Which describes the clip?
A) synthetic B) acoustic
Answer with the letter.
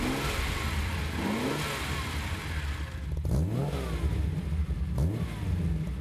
B